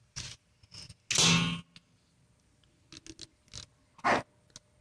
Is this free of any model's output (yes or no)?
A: yes